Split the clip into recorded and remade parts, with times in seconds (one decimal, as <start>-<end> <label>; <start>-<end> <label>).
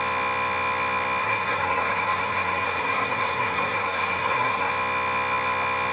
0.0-1.2 recorded; 1.2-4.7 remade; 4.7-5.9 recorded